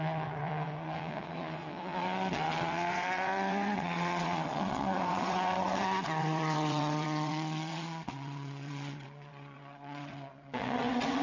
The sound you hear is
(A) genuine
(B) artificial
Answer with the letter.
B